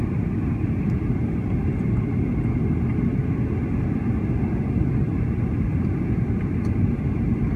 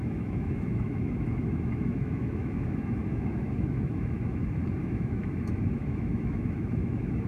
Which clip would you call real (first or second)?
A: first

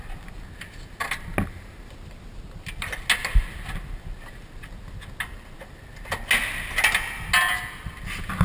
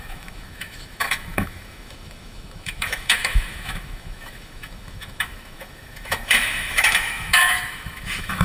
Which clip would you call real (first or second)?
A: first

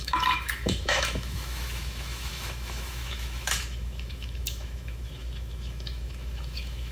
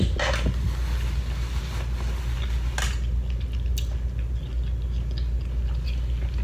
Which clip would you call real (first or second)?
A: second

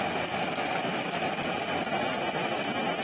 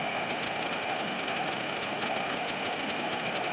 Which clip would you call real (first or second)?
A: first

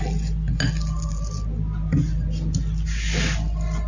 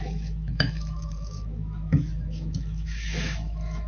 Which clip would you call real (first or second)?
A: first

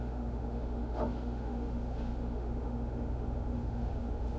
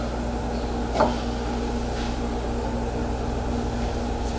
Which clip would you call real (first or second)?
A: second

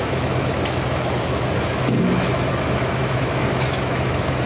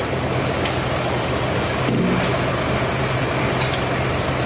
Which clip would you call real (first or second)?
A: second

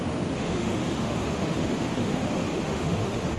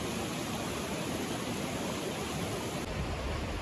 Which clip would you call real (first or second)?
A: second